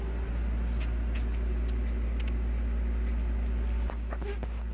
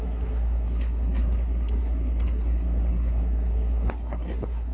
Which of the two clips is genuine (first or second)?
first